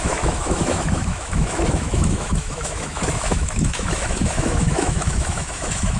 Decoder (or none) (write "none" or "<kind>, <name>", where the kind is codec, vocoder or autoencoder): autoencoder, DAC-VAE